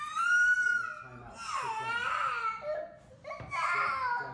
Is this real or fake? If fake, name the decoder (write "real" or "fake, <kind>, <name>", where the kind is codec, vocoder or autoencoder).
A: real